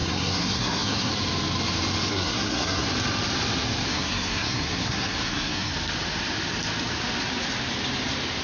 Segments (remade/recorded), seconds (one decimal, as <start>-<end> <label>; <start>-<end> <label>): 0.0-1.1 remade; 1.1-2.1 recorded; 2.1-2.9 remade; 2.9-3.9 recorded; 3.9-5.7 remade; 5.7-8.4 recorded